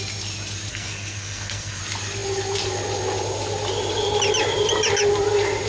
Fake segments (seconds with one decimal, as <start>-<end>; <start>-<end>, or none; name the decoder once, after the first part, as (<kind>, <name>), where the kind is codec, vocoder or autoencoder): 0.7-1.8 (codec, SNAC)